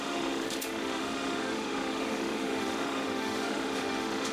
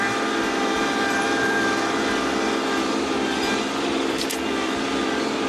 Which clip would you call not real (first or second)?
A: first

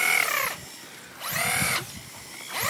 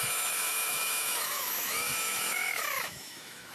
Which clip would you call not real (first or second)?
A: second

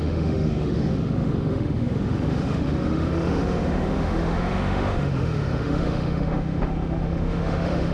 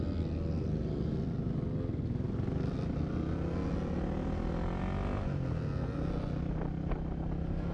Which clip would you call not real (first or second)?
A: first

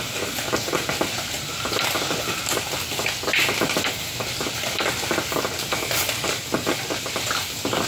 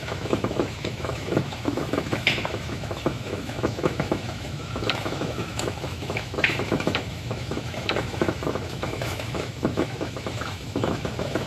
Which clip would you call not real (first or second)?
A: second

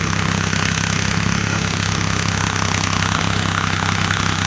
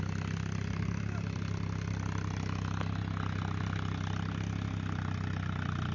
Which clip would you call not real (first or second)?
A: first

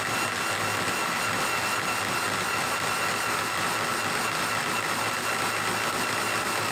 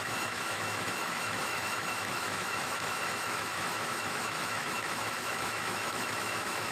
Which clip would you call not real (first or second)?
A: second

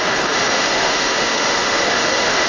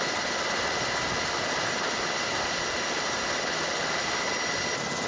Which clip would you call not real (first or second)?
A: first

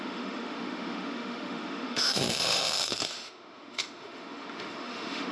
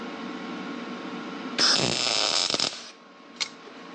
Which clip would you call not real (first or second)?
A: first